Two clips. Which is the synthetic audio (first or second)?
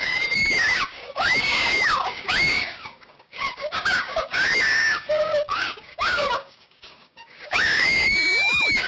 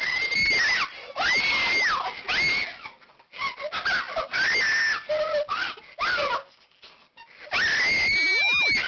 first